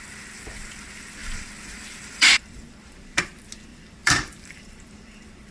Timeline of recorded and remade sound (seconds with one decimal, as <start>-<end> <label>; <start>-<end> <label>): 0.0-1.2 recorded; 1.2-3.2 remade; 3.2-3.7 recorded; 3.7-4.7 remade; 4.7-5.5 recorded